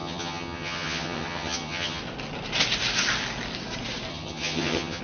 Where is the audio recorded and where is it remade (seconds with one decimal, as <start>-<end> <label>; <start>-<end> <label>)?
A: 0.0-2.0 remade; 2.0-4.1 recorded; 4.1-5.0 remade